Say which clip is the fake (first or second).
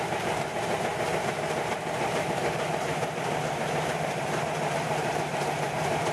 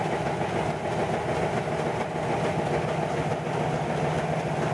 first